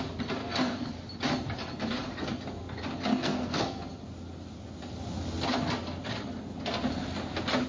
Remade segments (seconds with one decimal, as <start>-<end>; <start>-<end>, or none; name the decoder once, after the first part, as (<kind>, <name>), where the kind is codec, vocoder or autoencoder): 0.4-0.9 (codec, SNAC); 3.1-3.8